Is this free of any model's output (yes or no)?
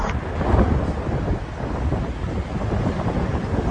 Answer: yes